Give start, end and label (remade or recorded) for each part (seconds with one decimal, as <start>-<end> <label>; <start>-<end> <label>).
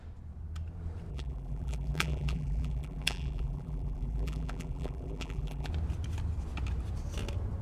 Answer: 0.0-1.1 recorded; 1.1-5.7 remade; 5.7-7.6 recorded